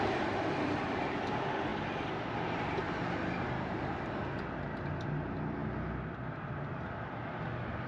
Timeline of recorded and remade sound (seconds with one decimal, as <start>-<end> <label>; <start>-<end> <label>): 0.0-7.9 recorded